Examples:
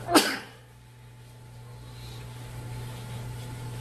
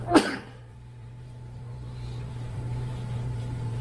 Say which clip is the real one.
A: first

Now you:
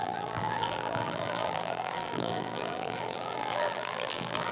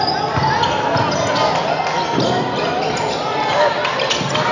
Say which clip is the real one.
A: second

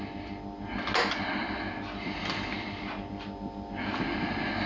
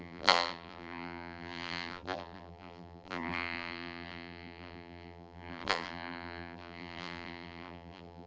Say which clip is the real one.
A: first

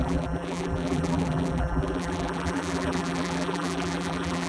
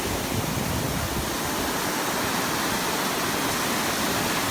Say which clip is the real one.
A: second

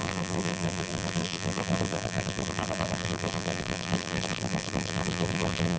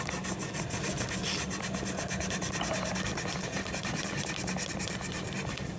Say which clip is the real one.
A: second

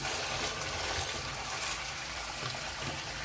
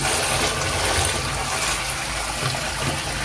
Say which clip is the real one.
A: second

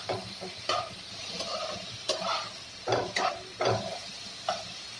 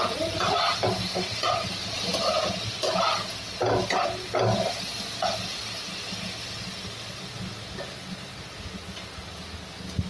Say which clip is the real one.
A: second